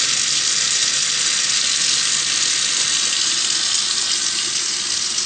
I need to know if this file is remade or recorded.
recorded